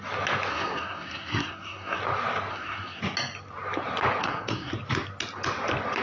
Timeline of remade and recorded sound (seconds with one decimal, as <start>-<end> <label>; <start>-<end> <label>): 0.0-0.5 recorded; 0.5-2.0 remade; 2.0-2.5 recorded; 2.5-3.0 remade; 3.0-4.2 recorded; 4.2-4.7 remade; 4.7-6.0 recorded